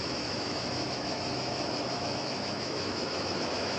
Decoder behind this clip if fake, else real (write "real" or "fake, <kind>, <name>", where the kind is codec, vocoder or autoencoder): fake, autoencoder, DAC-VAE